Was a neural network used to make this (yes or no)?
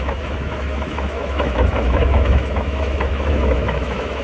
yes